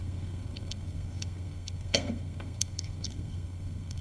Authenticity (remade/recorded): remade